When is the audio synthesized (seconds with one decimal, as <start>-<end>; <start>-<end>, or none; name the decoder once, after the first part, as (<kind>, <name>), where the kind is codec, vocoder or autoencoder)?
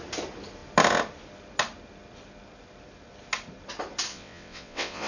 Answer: 4.1-5.1 (vocoder, WaveNeXt)